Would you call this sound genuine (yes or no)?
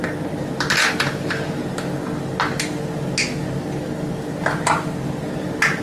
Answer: yes